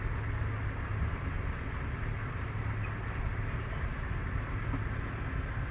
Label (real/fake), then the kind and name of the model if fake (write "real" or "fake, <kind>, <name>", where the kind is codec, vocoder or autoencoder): real